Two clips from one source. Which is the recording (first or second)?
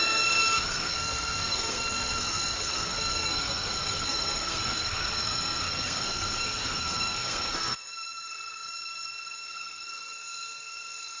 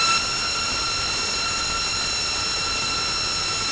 second